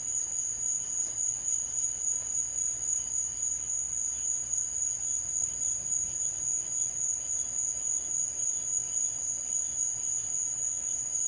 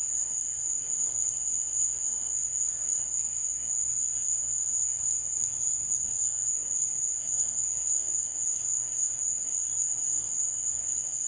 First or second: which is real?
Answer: first